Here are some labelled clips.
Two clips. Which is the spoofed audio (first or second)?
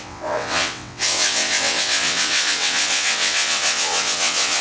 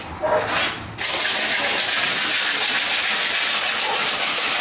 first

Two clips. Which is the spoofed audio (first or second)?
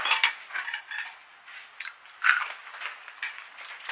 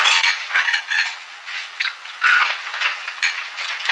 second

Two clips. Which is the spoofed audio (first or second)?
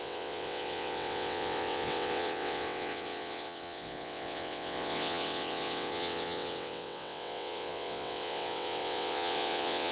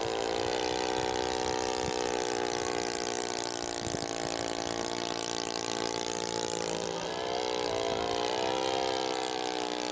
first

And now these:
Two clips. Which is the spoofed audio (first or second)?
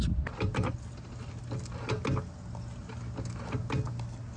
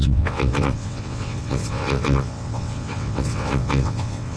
second